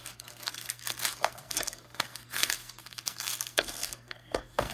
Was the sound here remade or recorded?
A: remade